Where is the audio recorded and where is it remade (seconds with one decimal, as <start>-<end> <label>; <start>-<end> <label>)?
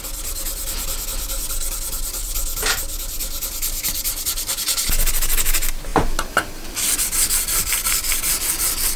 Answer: 0.0-3.2 recorded; 3.2-5.1 remade; 5.1-9.0 recorded